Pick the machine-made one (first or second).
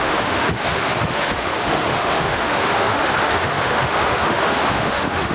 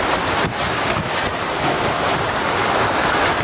first